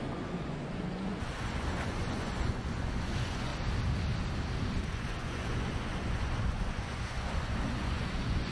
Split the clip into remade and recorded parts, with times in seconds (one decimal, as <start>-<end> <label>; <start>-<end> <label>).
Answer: 0.0-3.5 remade; 3.5-4.9 recorded; 4.9-8.5 remade